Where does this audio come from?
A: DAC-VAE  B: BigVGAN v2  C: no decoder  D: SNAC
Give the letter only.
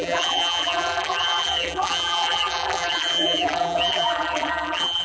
B